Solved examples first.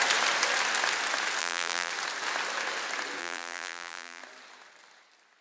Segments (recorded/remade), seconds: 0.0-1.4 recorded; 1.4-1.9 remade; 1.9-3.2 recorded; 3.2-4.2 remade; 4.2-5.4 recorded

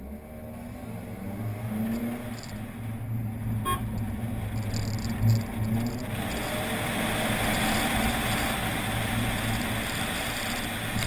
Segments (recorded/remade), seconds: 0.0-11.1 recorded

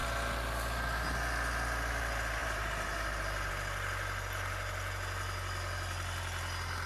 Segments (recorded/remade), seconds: 0.0-2.4 recorded; 2.4-3.5 remade; 3.5-6.9 recorded

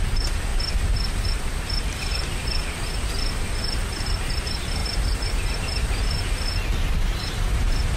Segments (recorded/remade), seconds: 0.0-0.5 remade; 0.5-1.1 recorded; 1.1-2.3 remade; 2.3-3.4 recorded; 3.4-8.0 remade

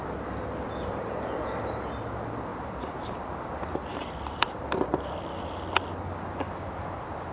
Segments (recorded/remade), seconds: 0.0-2.5 recorded; 2.5-3.1 remade; 3.1-3.9 recorded; 3.9-4.6 remade; 4.6-7.3 recorded